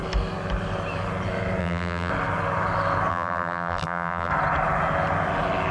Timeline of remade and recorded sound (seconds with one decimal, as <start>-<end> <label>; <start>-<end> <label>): 0.0-1.6 recorded; 1.6-2.1 remade; 2.1-3.1 recorded; 3.1-4.3 remade; 4.3-5.7 recorded